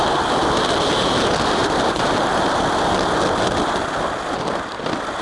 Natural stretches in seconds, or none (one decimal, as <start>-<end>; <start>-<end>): 0.0-1.6; 2.4-5.2